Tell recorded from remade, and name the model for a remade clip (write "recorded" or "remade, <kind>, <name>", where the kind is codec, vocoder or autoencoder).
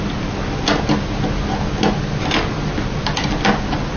recorded